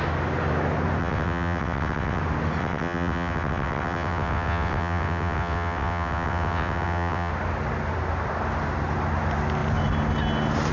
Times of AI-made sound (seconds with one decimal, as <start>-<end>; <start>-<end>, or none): 1.0-2.2; 2.6-7.3